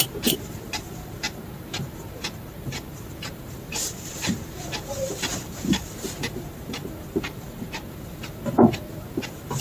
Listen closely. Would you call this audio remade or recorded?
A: remade